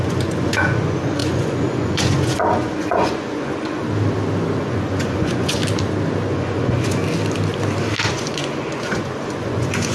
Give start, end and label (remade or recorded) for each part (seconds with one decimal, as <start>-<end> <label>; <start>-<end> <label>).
0.0-3.8 remade; 3.8-4.6 recorded; 4.6-5.6 remade; 5.6-6.3 recorded; 6.3-7.0 remade; 7.0-8.1 recorded; 8.1-9.9 remade